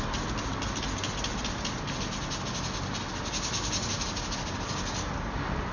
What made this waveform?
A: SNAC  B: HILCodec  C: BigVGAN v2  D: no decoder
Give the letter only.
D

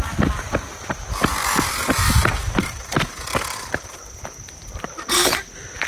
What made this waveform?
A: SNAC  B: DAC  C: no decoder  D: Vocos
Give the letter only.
C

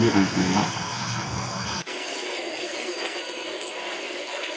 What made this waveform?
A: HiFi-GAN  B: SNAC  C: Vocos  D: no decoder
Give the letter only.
B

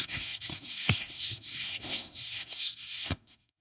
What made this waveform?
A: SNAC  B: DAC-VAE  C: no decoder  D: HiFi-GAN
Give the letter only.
A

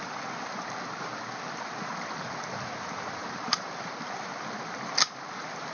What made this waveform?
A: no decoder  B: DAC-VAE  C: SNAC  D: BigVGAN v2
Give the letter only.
A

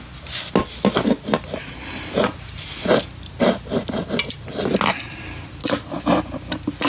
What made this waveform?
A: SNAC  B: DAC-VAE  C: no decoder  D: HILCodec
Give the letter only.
C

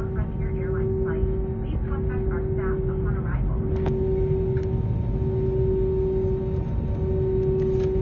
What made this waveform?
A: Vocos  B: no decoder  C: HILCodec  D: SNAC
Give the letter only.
B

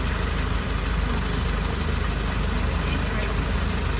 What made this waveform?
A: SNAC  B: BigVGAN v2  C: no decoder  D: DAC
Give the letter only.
C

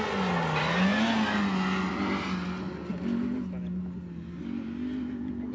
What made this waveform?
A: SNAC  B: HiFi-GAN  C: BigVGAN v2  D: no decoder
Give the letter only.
D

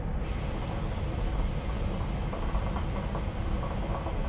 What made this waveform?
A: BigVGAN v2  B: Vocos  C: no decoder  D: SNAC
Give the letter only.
C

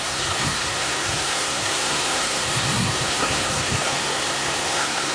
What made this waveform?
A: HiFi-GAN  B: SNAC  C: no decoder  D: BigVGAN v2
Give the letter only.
B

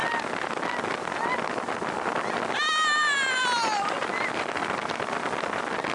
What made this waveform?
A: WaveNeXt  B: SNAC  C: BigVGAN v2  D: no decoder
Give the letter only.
D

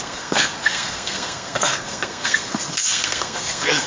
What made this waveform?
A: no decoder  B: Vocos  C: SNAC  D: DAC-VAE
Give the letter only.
C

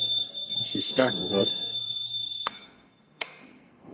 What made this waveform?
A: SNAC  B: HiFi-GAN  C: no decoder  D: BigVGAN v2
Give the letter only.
A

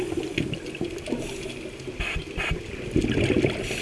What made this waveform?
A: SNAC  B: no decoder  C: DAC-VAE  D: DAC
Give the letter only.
B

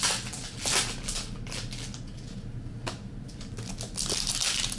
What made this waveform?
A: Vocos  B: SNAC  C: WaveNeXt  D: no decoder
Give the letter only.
D